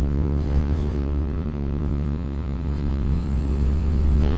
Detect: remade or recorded remade